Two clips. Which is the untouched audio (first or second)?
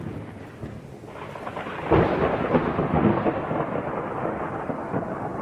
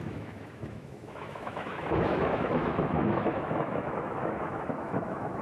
first